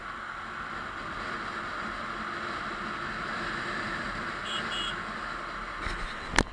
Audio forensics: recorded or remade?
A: recorded